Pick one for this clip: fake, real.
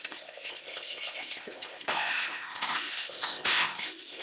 fake